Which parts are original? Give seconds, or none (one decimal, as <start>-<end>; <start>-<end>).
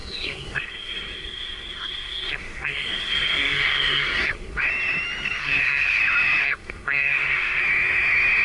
4.7-5.4; 6.0-6.4; 7.6-8.4